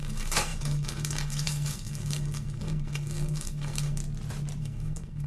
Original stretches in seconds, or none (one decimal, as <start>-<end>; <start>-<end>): 4.0-4.6